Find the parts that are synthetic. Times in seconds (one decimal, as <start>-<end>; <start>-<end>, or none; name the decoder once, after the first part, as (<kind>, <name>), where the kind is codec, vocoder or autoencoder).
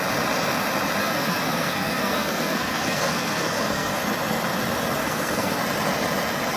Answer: 1.0-4.0 (codec, SNAC); 5.0-5.6